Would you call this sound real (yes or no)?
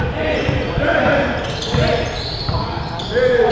yes